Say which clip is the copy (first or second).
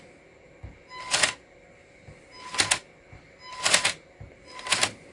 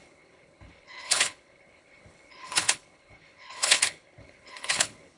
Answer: second